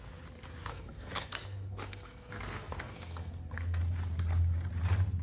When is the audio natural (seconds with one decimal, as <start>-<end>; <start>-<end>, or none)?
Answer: 0.0-0.7; 3.8-5.2